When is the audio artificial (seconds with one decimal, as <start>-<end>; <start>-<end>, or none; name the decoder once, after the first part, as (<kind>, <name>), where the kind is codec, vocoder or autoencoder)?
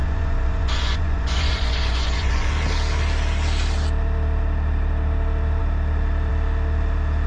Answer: 0.0-2.5 (vocoder, Vocos)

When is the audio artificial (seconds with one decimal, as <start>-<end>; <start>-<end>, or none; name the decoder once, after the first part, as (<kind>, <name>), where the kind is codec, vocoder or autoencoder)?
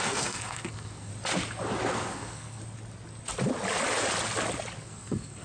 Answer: 0.0-1.1 (codec, SNAC); 1.9-2.6; 4.8-5.4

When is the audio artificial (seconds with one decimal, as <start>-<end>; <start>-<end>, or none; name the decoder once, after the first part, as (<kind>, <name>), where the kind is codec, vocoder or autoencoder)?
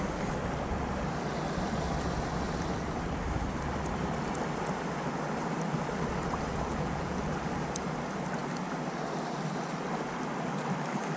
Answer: 6.7-7.2 (vocoder, Vocos)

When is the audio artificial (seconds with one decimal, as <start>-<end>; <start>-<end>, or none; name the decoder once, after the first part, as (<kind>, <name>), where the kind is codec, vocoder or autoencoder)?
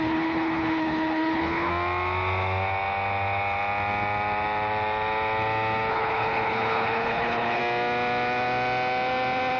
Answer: 0.0-1.7 (codec, HILCodec); 5.9-7.6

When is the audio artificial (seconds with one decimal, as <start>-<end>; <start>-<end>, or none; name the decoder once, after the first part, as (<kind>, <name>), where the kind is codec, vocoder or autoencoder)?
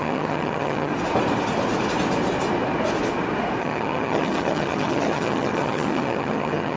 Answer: 0.0-0.9 (vocoder, HiFi-GAN); 3.6-6.8